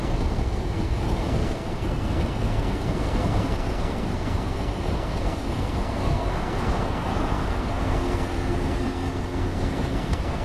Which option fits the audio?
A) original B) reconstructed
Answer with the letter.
B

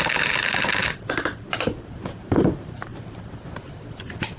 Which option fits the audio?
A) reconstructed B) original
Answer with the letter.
A